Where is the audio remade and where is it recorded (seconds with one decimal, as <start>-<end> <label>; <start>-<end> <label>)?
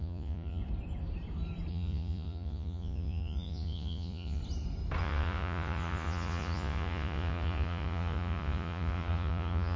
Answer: 0.0-0.6 remade; 0.6-1.7 recorded; 1.7-4.4 remade; 4.4-5.0 recorded; 5.0-9.8 remade